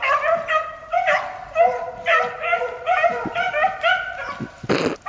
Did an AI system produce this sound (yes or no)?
no